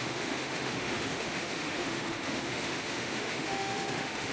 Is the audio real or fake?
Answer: fake